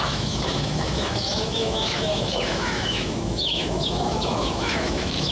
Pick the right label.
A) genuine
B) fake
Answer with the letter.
B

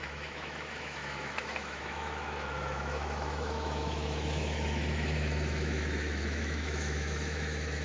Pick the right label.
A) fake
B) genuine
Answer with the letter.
A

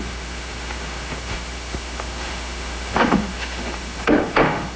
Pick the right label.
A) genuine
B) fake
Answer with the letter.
B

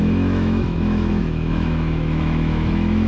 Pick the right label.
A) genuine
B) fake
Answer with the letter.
B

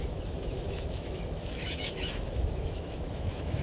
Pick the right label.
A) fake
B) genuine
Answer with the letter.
A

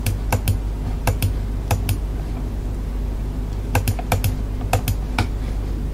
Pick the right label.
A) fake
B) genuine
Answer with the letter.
B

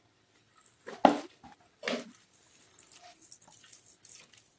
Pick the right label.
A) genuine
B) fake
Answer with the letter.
A